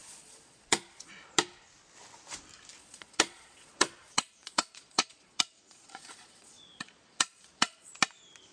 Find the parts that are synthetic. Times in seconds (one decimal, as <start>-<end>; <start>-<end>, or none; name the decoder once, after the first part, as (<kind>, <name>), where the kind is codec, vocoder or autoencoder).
0.0-1.1 (vocoder, Vocos); 2.8-7.9